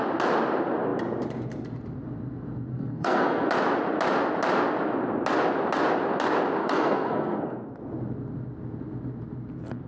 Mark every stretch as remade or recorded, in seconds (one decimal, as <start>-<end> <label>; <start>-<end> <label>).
0.0-2.7 recorded; 2.7-3.5 remade; 3.5-6.6 recorded; 6.6-7.7 remade; 7.7-9.9 recorded